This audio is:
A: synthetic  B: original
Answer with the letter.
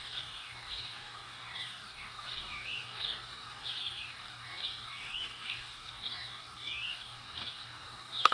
A